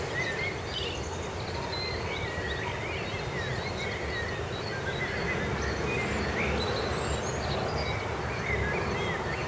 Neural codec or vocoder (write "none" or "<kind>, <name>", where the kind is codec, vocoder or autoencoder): none